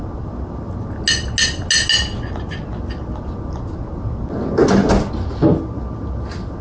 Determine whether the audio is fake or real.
real